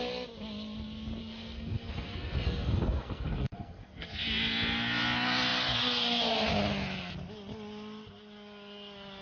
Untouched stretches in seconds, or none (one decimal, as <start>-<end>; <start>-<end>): 0.0-1.2; 4.2-9.2